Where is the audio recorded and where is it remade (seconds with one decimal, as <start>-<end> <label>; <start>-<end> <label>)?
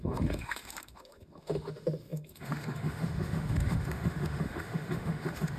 0.0-5.6 remade